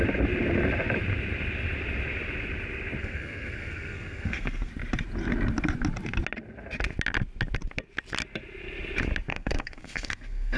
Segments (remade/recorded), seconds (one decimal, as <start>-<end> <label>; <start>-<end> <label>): 0.0-3.0 recorded; 3.0-4.7 remade; 4.7-9.3 recorded; 9.3-10.6 remade